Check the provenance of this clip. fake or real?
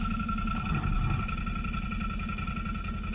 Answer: real